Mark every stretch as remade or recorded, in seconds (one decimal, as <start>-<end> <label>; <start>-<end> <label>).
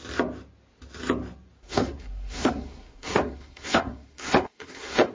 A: 0.0-1.6 recorded; 1.6-5.1 remade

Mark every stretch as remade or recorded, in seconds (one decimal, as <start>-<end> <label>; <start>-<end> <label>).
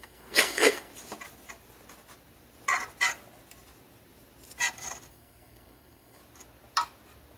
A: 0.0-0.9 remade; 0.9-5.1 recorded; 5.1-6.2 remade; 6.2-7.4 recorded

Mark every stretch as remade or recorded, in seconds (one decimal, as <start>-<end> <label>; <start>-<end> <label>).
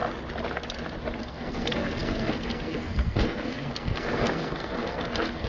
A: 0.0-1.2 recorded; 1.2-5.5 remade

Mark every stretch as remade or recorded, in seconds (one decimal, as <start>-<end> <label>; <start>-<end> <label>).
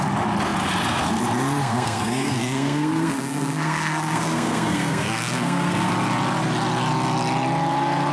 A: 0.0-1.6 recorded; 1.6-5.9 remade; 5.9-8.1 recorded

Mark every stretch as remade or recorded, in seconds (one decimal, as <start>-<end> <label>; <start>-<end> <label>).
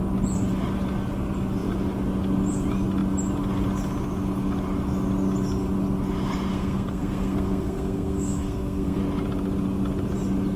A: 0.0-6.5 recorded; 6.5-9.0 remade; 9.0-10.6 recorded